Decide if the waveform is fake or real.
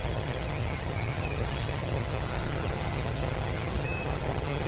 fake